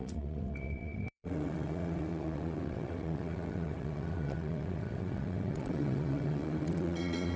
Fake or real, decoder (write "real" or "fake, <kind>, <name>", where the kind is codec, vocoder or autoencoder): fake, vocoder, WaveNeXt